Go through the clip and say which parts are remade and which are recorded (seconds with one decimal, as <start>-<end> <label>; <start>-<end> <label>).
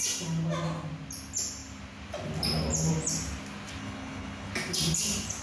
0.0-3.8 recorded; 3.8-4.5 remade; 4.5-5.4 recorded